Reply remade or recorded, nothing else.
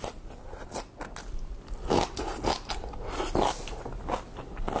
recorded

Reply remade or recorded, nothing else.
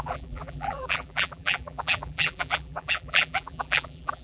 remade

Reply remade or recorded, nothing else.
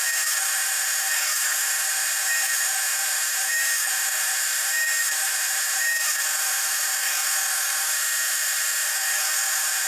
remade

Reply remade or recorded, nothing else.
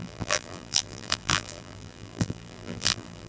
remade